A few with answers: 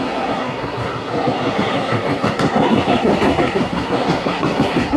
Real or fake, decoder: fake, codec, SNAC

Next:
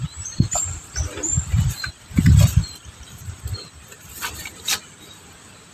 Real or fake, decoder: real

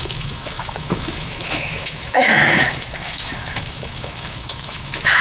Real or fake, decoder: fake, autoencoder, DAC-VAE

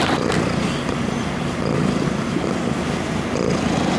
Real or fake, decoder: real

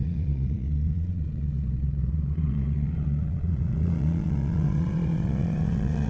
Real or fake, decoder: fake, vocoder, Vocos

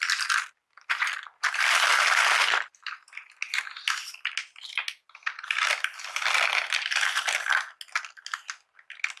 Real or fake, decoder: real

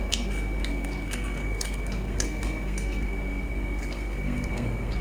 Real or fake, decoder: fake, codec, SNAC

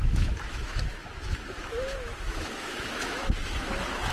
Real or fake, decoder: fake, autoencoder, DAC-VAE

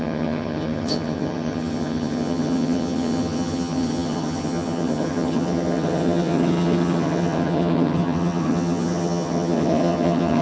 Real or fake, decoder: fake, vocoder, HiFi-GAN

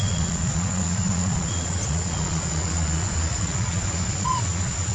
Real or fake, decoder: fake, vocoder, Vocos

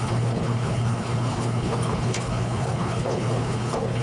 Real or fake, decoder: fake, codec, HILCodec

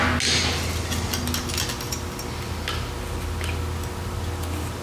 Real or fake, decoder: real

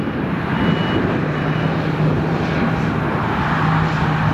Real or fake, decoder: real